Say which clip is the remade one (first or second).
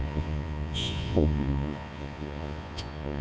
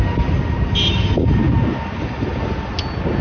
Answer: first